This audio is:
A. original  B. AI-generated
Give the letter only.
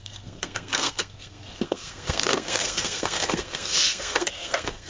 B